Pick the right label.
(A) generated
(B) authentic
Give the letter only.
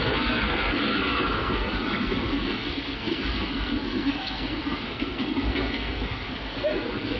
A